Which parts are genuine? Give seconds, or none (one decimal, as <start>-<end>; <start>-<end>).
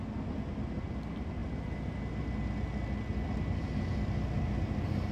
0.0-5.1